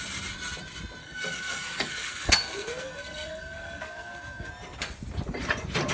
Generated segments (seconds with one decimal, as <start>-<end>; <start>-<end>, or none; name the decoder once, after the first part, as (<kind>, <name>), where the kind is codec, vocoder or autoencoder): 1.0-4.5 (codec, SNAC)